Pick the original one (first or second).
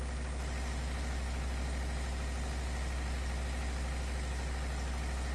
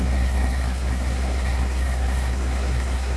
first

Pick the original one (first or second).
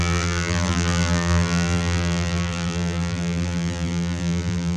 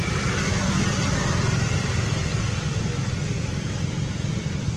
second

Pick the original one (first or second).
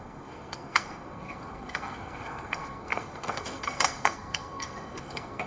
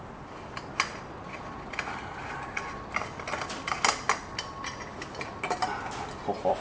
second